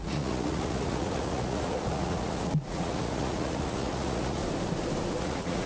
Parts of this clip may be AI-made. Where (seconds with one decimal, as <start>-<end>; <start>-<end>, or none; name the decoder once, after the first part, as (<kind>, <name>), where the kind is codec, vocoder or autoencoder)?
0.0-4.4 (vocoder, Vocos); 5.2-5.7